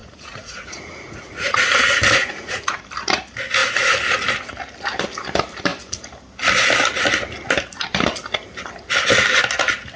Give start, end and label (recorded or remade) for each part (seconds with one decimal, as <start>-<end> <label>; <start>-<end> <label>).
0.0-1.7 remade; 1.7-2.2 recorded; 2.2-2.8 remade; 2.8-10.0 recorded